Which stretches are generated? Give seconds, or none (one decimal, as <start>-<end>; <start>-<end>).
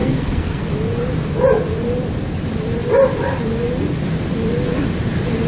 0.0-0.7